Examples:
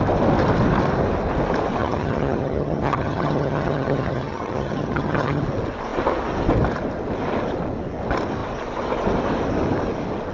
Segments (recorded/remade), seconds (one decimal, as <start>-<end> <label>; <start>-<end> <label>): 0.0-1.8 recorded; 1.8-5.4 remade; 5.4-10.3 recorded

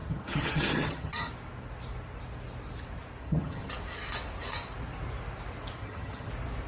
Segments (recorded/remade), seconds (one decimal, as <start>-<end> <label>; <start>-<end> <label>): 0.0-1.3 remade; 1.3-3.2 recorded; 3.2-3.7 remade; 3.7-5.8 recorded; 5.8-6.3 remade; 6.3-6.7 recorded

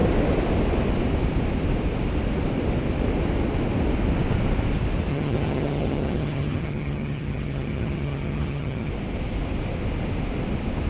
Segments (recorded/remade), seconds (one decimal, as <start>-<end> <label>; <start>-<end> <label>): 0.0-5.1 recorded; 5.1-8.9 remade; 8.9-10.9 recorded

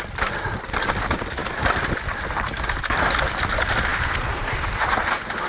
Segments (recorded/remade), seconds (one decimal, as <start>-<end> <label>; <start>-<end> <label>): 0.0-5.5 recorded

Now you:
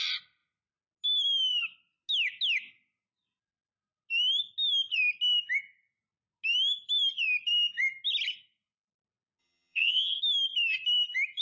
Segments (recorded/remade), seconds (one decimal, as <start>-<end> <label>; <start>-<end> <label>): 0.0-9.4 recorded; 9.4-10.2 remade; 10.2-11.4 recorded

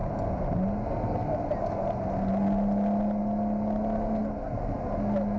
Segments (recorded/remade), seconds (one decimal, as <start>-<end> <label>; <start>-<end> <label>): 0.0-5.4 recorded

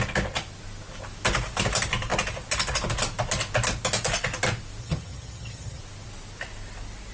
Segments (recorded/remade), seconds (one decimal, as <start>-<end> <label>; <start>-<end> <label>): 0.0-4.8 recorded; 4.8-5.8 remade; 5.8-7.1 recorded

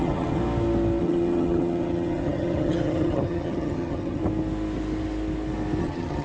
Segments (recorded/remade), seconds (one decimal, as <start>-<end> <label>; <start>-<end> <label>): 0.0-0.4 remade; 0.4-1.0 recorded; 1.0-4.2 remade; 4.2-5.8 recorded; 5.8-6.2 remade